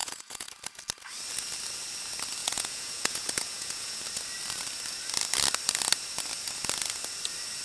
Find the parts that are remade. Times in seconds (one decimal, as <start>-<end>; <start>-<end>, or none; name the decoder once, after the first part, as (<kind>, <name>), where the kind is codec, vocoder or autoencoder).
0.0-0.5 (vocoder, Vocos); 2.4-4.0